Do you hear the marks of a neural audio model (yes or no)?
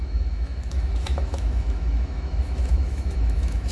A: yes